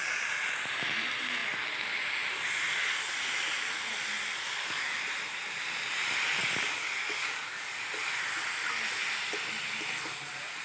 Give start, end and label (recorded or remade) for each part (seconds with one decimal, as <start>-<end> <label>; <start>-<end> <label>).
0.0-4.4 recorded; 4.4-5.0 remade; 5.0-6.4 recorded; 6.4-7.7 remade; 7.7-10.6 recorded